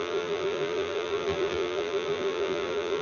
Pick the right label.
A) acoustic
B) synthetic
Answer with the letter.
B